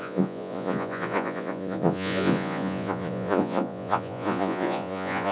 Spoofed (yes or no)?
yes